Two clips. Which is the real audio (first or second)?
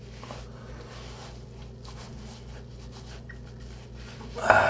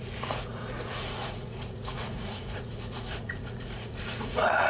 first